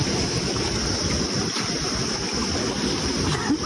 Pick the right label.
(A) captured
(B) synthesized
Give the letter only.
A